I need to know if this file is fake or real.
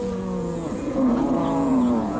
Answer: fake